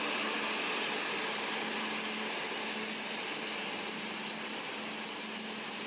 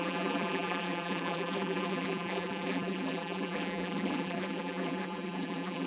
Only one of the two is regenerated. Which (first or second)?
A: second